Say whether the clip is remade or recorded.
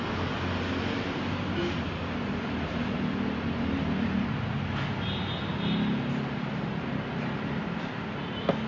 recorded